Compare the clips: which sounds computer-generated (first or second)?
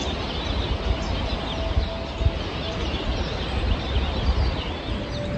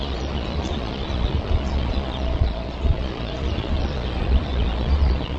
second